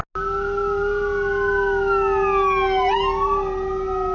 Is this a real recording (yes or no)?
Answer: yes